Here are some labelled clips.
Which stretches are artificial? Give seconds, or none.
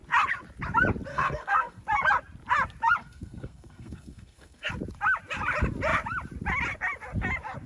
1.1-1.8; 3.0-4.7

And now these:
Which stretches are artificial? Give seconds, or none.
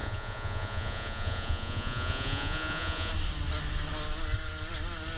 0.0-3.1